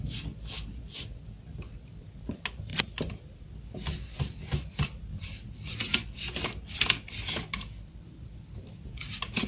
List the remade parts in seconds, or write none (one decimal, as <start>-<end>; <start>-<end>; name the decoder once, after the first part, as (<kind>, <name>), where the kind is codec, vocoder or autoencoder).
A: none